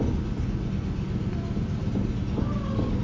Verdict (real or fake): real